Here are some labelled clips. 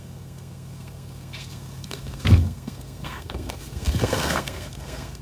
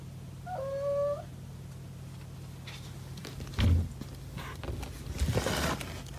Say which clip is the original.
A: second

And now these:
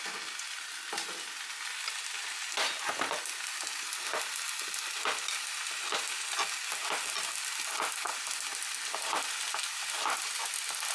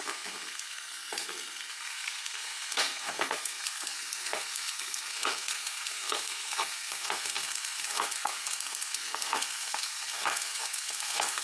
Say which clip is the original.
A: first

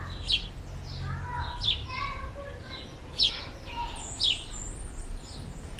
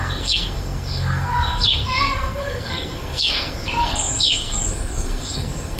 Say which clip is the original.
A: first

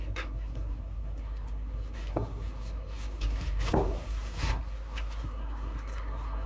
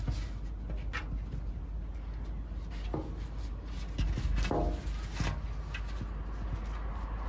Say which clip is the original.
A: second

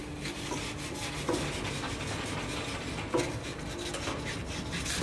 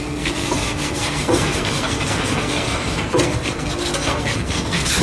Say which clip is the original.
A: first